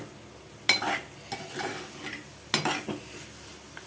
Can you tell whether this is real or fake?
real